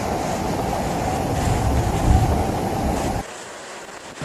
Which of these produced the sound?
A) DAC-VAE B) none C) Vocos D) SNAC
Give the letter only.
B